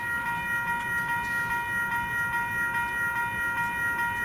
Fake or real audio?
real